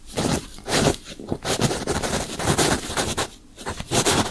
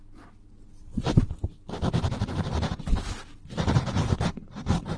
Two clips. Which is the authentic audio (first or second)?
second